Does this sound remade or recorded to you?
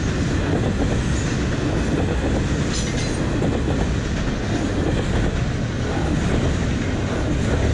recorded